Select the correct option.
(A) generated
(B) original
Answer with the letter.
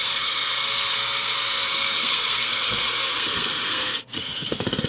A